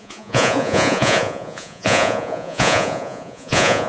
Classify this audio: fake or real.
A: fake